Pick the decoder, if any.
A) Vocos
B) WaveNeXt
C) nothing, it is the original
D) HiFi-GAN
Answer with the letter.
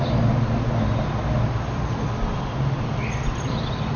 C